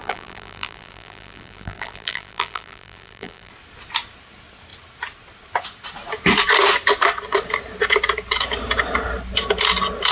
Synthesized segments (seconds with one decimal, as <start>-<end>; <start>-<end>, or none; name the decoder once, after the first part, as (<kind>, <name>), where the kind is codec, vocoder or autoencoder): 0.0-3.5 (vocoder, BigVGAN v2)